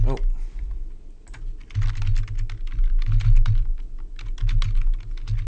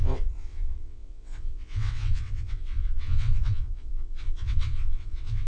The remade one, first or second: second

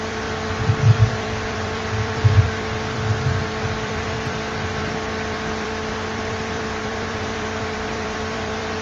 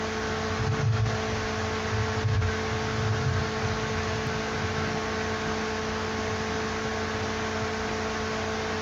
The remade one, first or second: first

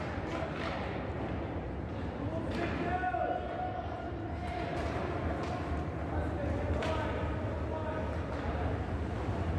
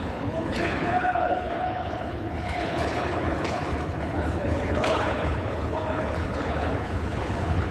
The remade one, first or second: second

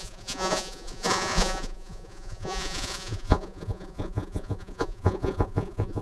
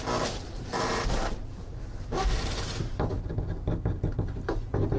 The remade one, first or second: first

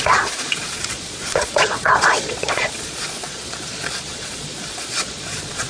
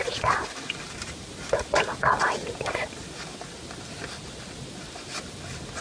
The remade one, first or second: first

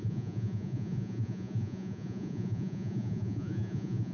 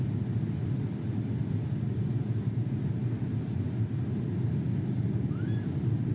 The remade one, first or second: first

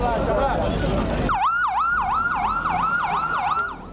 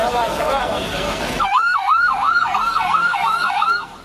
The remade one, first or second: second